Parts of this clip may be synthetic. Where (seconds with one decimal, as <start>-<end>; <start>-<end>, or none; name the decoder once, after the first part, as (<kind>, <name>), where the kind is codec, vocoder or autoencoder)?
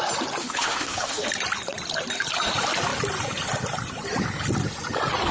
0.4-1.3 (autoencoder, DAC-VAE)